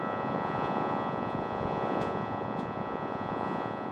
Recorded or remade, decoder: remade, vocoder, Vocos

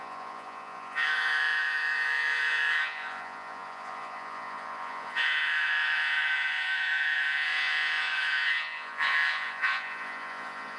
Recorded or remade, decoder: remade, vocoder, Vocos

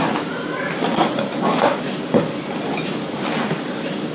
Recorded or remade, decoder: recorded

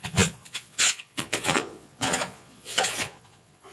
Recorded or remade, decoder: remade, vocoder, Vocos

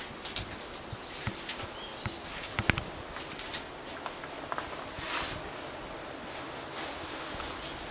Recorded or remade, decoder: recorded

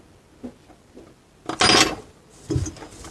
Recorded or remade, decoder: recorded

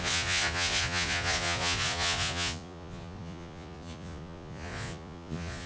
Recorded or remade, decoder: remade, vocoder, Vocos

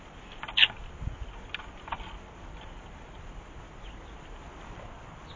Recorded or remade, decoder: recorded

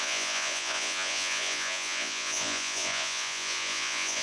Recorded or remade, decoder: remade, vocoder, Vocos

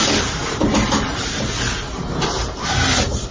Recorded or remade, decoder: recorded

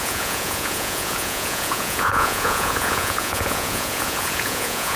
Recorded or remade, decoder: remade, vocoder, Vocos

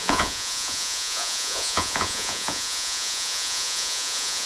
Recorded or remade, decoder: remade, vocoder, Vocos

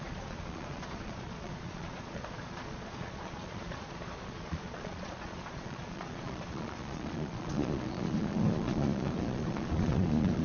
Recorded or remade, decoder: remade, vocoder, Vocos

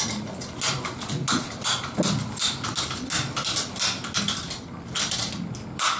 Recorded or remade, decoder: recorded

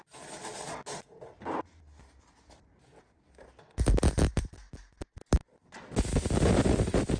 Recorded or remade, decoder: recorded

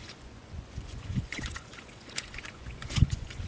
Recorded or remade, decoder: remade, vocoder, Vocos